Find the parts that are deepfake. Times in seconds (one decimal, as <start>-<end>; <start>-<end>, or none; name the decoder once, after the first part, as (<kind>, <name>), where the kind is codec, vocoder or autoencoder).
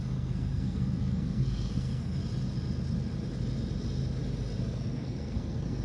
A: 0.0-2.2 (codec, SNAC); 4.6-5.8